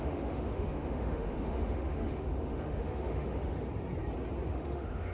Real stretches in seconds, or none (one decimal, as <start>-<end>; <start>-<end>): 3.7-4.5